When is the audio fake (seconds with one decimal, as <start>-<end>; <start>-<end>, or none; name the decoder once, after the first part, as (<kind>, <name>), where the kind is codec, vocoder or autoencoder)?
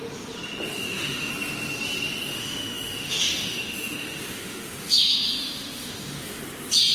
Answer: 0.7-1.3 (autoencoder, DAC-VAE); 2.3-6.4